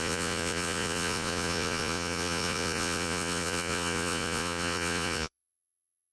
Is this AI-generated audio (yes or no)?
yes